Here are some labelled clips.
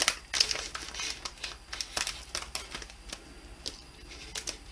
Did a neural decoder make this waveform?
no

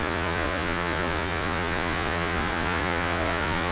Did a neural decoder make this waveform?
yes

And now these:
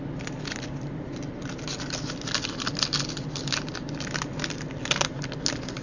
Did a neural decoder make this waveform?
no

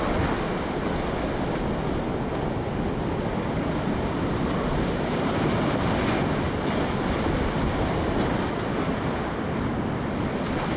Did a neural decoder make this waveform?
no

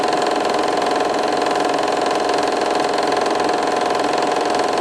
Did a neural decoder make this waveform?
no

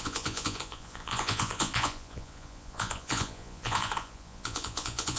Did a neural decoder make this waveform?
yes